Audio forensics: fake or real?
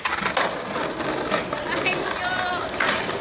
real